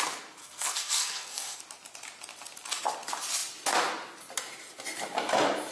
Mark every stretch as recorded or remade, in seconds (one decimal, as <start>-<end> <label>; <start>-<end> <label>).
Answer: 0.0-0.4 recorded; 0.4-1.6 remade; 1.6-5.7 recorded